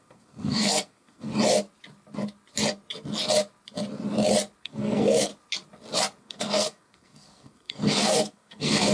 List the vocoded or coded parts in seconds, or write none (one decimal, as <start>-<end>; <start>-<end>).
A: 0.0-1.3; 4.6-5.3; 6.2-8.9